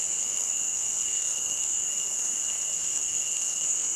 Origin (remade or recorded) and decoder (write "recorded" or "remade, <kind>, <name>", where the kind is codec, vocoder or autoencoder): remade, codec, SNAC